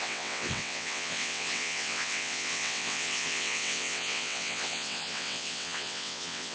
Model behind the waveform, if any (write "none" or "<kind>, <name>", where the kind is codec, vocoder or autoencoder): vocoder, WaveNeXt